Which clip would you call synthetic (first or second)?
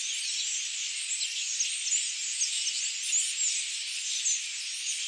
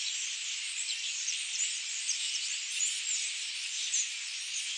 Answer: second